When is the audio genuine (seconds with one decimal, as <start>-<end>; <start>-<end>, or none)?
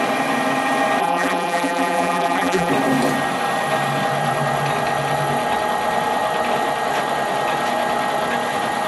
0.0-1.0; 2.7-8.9